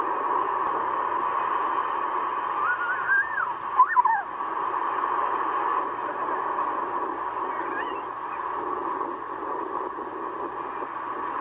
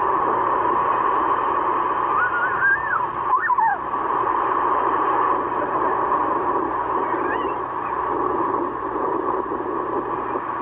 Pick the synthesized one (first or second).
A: second